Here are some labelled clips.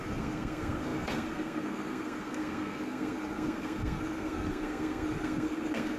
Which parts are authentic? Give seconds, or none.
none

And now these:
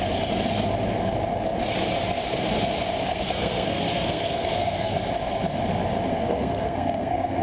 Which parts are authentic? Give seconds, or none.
0.0-3.1; 5.0-6.1

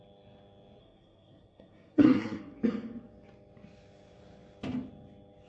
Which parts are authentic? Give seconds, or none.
0.0-0.8; 2.4-5.5

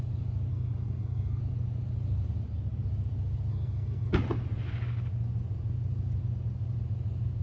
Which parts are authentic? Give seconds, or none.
0.0-0.5; 1.4-3.5; 4.1-7.4

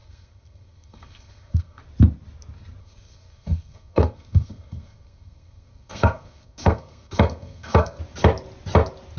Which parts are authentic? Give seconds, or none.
1.8-2.8; 8.0-9.2

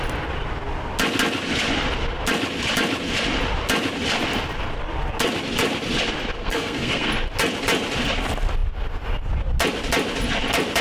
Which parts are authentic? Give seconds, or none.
0.0-6.4; 7.1-10.8

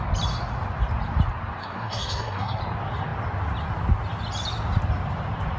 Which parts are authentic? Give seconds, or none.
0.0-1.6; 2.6-5.6

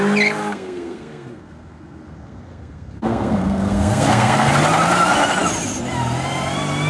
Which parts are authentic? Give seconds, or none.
0.0-0.4; 4.5-6.9